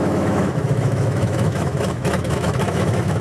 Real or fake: fake